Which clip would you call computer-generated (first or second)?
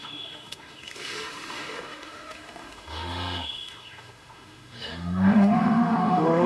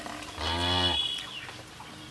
first